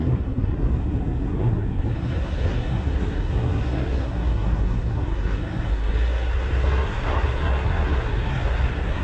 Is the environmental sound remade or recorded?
remade